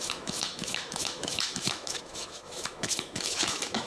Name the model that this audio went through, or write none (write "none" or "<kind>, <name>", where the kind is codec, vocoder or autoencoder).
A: autoencoder, DAC-VAE